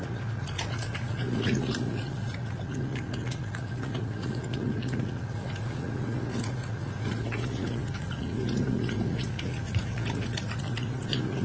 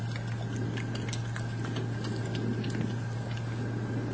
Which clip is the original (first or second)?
second